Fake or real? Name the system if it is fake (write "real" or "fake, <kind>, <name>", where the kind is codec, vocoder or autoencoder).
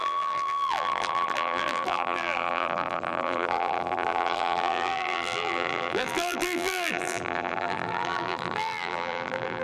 fake, vocoder, BigVGAN v2